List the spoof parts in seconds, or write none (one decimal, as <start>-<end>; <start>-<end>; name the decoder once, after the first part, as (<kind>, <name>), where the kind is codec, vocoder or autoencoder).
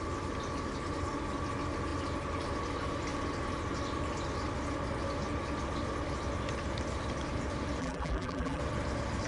7.8-8.6 (vocoder, BigVGAN v2)